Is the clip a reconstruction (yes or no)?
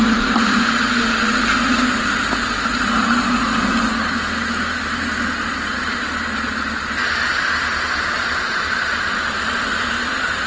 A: no